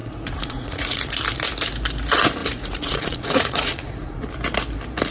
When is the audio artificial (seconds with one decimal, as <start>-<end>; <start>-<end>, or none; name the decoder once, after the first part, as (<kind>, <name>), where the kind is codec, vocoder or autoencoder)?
0.0-1.1 (vocoder, Vocos); 2.4-4.2